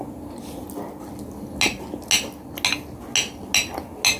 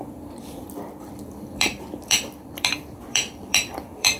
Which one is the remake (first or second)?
second